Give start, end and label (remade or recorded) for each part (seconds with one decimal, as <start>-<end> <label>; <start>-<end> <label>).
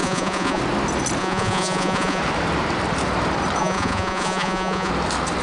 0.0-0.6 remade; 0.6-1.2 recorded; 1.2-2.2 remade; 2.2-3.6 recorded; 3.6-4.9 remade; 4.9-5.4 recorded